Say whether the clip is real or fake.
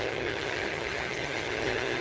fake